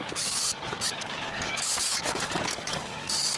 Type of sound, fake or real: fake